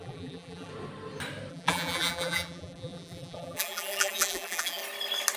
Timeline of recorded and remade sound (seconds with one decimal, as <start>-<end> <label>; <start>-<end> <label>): 0.0-0.7 remade; 0.7-1.5 recorded; 1.5-4.8 remade; 4.8-5.4 recorded